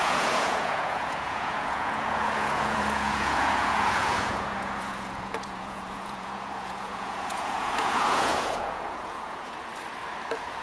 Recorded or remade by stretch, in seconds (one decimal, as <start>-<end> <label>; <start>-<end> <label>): 0.0-9.7 remade; 9.7-10.6 recorded

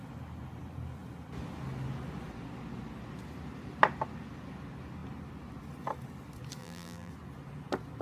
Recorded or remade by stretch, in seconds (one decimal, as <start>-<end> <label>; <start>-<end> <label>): 0.0-6.6 recorded; 6.6-7.1 remade; 7.1-8.0 recorded

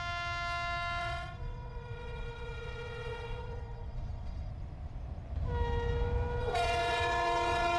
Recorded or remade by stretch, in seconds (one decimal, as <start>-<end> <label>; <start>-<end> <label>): 0.0-1.0 recorded; 1.0-4.5 remade; 4.5-6.4 recorded; 6.4-7.8 remade

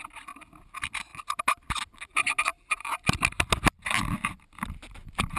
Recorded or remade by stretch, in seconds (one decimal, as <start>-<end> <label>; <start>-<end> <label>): 0.0-5.4 recorded

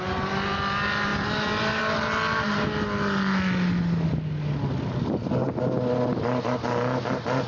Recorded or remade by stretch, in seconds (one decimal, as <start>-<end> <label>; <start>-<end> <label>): 0.0-7.5 recorded

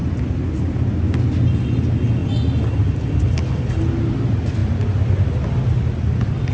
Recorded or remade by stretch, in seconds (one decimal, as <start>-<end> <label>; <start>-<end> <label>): 0.0-6.5 recorded